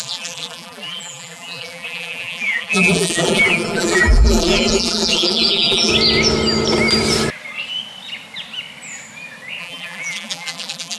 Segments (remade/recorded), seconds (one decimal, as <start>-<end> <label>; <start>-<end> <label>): 0.0-5.9 remade; 5.9-9.6 recorded; 9.6-11.0 remade